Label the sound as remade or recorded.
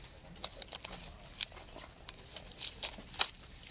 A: remade